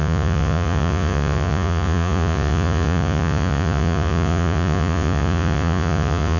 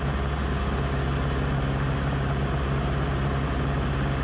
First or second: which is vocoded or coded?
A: first